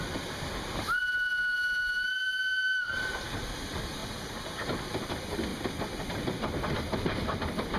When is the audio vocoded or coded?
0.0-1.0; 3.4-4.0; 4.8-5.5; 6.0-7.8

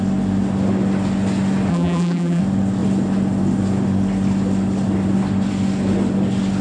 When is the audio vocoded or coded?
1.7-2.4

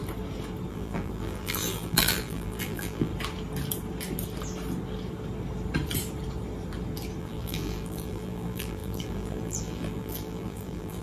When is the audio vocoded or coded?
0.7-3.1; 7.2-11.0

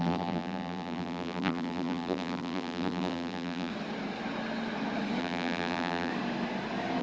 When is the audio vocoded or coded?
0.0-3.7; 5.2-6.1

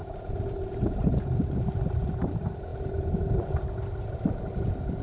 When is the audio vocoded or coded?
none

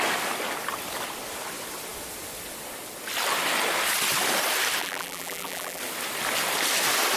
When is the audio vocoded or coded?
4.8-5.8